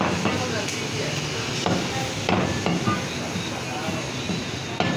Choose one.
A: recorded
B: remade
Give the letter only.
A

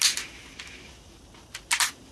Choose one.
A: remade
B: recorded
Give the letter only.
B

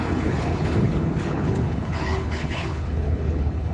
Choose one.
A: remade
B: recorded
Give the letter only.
A